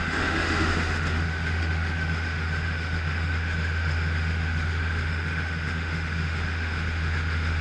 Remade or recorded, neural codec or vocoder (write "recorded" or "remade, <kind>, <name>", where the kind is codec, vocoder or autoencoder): remade, autoencoder, DAC-VAE